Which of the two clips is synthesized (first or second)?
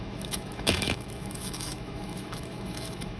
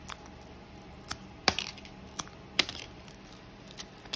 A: first